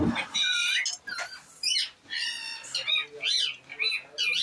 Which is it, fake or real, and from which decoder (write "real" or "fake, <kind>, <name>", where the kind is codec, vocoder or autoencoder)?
real